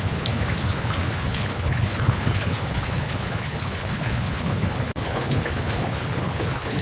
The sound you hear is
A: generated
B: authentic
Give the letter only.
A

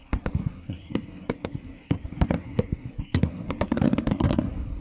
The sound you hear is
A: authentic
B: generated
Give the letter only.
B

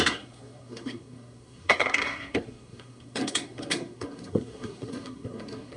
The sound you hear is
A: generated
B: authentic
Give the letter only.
A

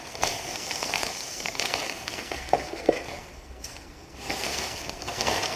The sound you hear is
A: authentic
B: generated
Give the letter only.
B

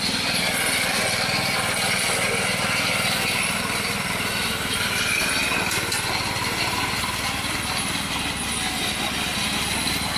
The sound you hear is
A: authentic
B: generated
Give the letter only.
A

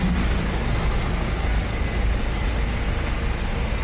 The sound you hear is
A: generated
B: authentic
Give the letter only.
B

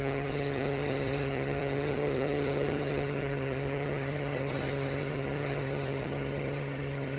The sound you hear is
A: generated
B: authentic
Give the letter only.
A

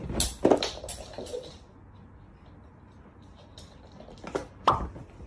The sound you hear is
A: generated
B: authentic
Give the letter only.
B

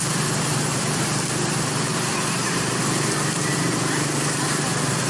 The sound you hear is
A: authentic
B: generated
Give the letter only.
A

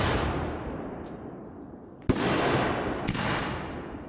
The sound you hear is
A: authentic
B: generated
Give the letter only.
A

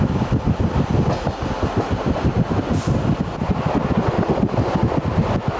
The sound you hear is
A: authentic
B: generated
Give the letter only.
A